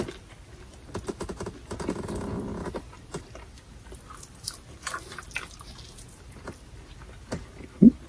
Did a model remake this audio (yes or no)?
no